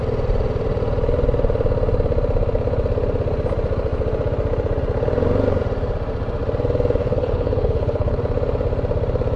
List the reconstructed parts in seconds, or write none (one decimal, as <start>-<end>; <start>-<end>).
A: 7.0-8.2